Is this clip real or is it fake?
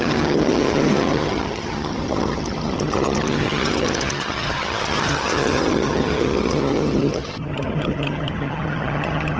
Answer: fake